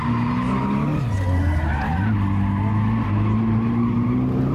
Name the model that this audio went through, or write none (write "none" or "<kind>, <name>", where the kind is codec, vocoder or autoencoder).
none